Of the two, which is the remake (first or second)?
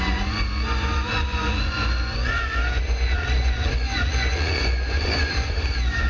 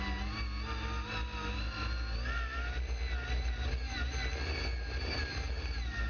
first